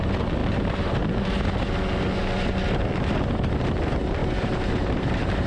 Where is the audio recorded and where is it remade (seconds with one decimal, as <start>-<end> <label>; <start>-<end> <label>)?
0.0-4.2 recorded; 4.2-5.5 remade